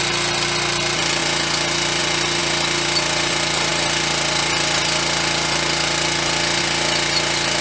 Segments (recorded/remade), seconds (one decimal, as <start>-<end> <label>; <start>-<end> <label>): 0.0-7.6 recorded